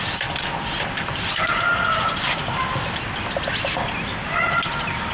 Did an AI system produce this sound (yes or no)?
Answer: no